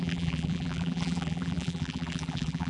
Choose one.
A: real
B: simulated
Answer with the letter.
B